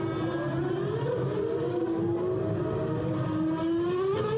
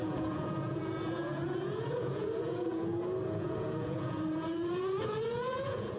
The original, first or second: first